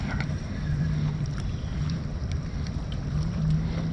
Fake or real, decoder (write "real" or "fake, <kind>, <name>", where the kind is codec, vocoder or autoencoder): fake, vocoder, BigVGAN v2